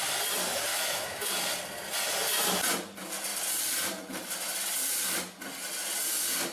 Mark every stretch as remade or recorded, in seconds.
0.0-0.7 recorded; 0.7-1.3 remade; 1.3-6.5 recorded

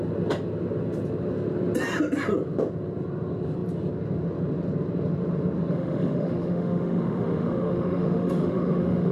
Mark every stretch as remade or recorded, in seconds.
0.0-5.7 recorded; 5.7-9.1 remade

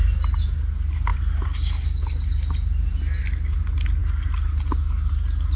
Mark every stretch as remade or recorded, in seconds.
0.0-5.6 recorded

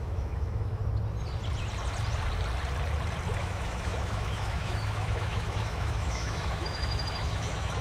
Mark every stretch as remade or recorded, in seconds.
0.0-0.8 remade; 0.8-3.4 recorded; 3.4-7.8 remade

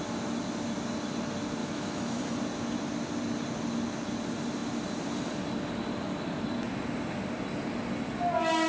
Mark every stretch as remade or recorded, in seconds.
0.0-1.6 recorded; 1.6-2.2 remade; 2.2-8.7 recorded

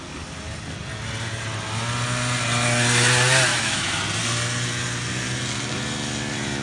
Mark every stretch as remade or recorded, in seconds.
0.0-3.5 recorded; 3.5-4.0 remade; 4.0-6.6 recorded

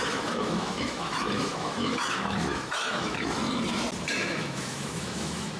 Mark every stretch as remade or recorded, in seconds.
0.0-3.4 remade; 3.4-4.1 recorded; 4.1-5.6 remade